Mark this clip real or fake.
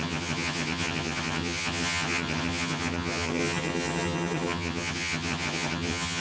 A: fake